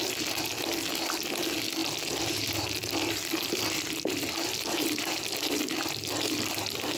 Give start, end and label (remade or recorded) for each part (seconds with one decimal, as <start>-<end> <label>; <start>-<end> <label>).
0.0-7.0 recorded